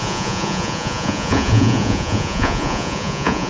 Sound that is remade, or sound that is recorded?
remade